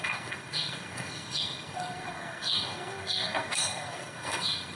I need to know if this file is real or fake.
fake